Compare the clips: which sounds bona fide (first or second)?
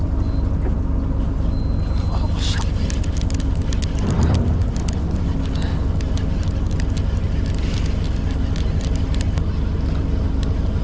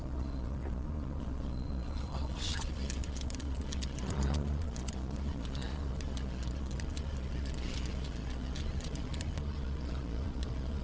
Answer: first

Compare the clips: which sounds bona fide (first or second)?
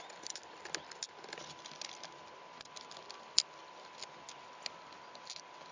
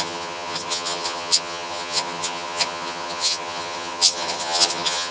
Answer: first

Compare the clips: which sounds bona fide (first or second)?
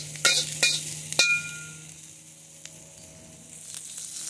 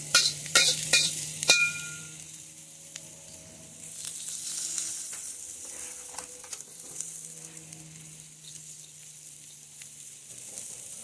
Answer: first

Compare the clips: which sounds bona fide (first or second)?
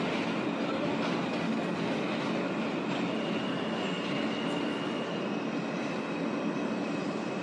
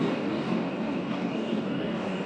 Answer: first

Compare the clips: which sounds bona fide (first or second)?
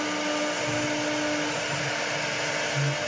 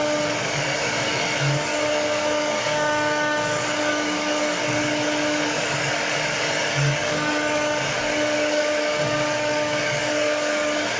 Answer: first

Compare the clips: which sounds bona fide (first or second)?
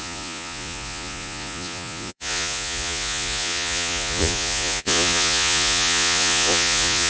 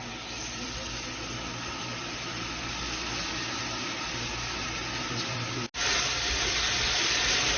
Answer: second